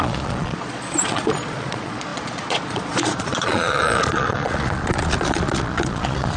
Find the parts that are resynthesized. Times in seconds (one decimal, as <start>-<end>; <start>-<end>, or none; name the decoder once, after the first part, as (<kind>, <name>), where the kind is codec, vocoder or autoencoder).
0.0-6.4 (vocoder, Vocos)